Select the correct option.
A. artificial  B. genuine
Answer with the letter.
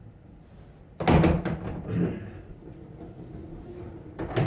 B